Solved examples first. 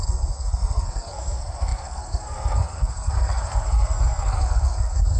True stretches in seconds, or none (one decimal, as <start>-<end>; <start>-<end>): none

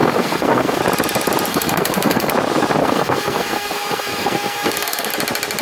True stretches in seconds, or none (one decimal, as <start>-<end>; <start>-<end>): 0.8-1.5; 2.3-2.8; 5.1-5.6

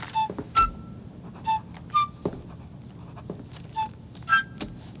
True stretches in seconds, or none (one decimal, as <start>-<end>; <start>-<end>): 0.0-5.0